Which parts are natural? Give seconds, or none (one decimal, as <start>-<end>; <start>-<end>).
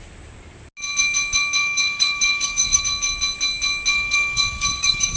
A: 0.0-1.6; 2.8-3.9